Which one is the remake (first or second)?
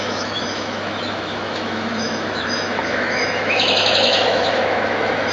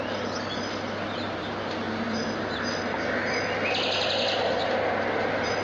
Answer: first